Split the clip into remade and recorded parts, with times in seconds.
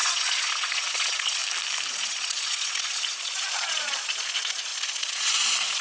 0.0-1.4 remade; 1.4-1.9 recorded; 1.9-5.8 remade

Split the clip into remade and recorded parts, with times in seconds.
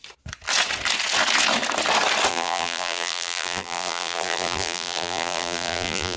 0.0-2.3 recorded; 2.3-6.2 remade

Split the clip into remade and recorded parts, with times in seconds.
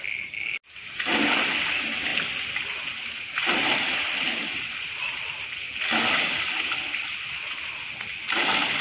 0.0-8.8 recorded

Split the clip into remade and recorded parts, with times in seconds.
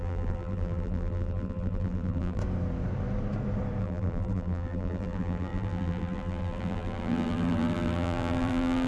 0.0-2.4 remade; 2.4-3.8 recorded; 3.8-8.9 remade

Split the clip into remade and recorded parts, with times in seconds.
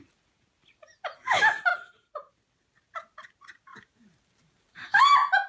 0.0-1.7 recorded; 1.7-2.3 remade; 2.3-3.7 recorded; 3.7-5.0 remade; 5.0-5.5 recorded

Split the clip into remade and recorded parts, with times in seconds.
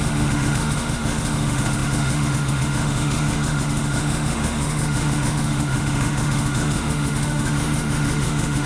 0.0-8.7 remade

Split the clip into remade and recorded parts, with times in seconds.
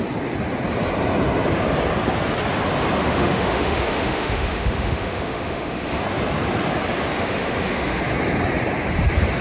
0.0-3.0 recorded; 3.0-6.0 remade; 6.0-7.1 recorded; 7.1-8.0 remade; 8.0-9.4 recorded